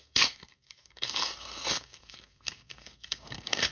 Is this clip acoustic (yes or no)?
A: no